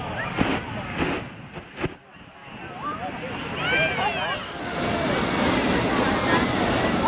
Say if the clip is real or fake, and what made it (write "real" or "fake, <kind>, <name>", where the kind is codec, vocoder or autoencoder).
real